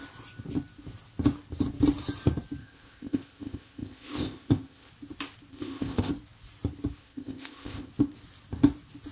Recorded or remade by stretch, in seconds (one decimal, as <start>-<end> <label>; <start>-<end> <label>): 0.0-2.6 recorded; 2.6-4.9 remade; 4.9-5.5 recorded; 5.5-6.1 remade; 6.1-7.0 recorded; 7.0-7.9 remade; 7.9-9.1 recorded